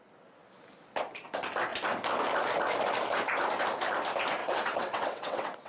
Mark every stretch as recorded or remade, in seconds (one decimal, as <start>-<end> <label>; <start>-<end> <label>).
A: 0.0-4.4 recorded; 4.4-5.7 remade